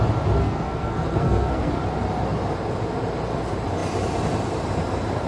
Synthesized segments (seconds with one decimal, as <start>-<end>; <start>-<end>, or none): 0.4-1.7

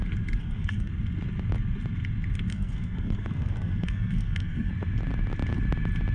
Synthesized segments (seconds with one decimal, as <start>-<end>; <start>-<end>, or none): 0.4-0.9; 2.5-4.7

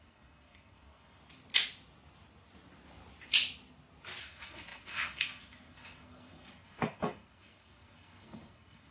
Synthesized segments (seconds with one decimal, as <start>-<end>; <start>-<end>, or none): 0.0-1.2; 4.2-8.9

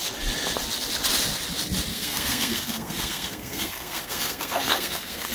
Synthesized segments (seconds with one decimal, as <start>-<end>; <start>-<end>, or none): 1.9-5.3